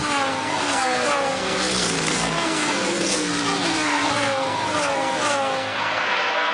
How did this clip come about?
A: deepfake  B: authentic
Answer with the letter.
A